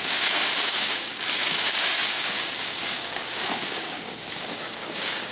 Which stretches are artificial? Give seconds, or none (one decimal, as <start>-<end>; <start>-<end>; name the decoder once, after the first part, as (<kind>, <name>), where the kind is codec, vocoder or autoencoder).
0.0-5.3 (codec, DAC)